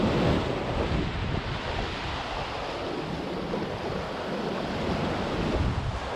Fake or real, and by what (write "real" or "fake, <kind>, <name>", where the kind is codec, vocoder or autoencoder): real